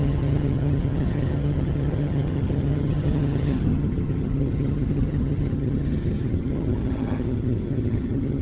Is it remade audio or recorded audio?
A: remade